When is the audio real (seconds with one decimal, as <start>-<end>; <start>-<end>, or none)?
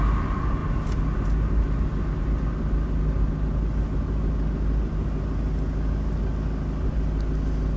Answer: 0.0-7.8